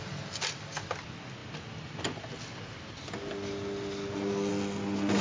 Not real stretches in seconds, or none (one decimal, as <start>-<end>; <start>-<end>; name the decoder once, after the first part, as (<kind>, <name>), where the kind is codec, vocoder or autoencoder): none